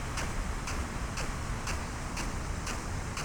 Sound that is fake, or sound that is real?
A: fake